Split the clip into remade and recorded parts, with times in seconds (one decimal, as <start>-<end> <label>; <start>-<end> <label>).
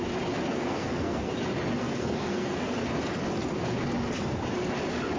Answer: 0.0-0.5 recorded; 0.5-1.3 remade; 1.3-1.8 recorded; 1.8-3.0 remade; 3.0-5.2 recorded